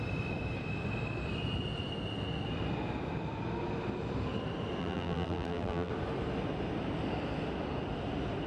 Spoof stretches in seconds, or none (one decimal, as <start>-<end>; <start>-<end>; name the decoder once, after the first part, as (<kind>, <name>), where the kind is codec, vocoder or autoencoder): 4.8-5.9 (vocoder, BigVGAN v2)